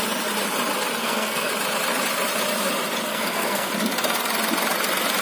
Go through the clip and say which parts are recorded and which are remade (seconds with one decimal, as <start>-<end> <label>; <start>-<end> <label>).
0.0-1.0 recorded; 1.0-1.5 remade; 1.5-3.1 recorded; 3.1-3.7 remade; 3.7-5.2 recorded